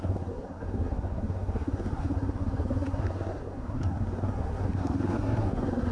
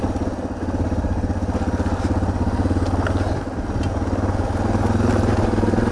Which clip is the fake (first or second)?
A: first